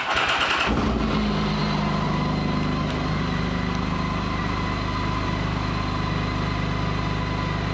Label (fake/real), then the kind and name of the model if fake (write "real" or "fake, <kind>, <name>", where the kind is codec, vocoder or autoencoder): real